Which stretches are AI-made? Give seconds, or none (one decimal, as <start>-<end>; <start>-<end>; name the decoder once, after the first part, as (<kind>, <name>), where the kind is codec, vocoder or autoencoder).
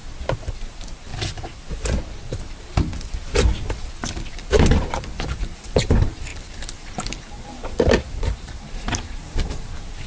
0.5-1.1 (vocoder, BigVGAN v2); 4.3-10.1